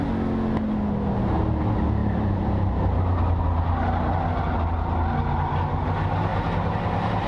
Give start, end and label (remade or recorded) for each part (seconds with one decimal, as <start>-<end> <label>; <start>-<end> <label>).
0.0-2.0 recorded; 2.0-2.7 remade; 2.7-6.3 recorded; 6.3-7.3 remade